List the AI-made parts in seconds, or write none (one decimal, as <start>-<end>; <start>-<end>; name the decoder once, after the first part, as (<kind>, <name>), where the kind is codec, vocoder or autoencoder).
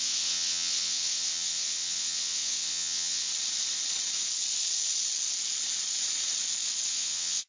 0.0-3.3 (vocoder, WaveNeXt); 6.9-7.5